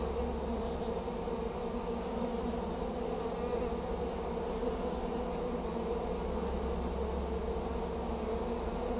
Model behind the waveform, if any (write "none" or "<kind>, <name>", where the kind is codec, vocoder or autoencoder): none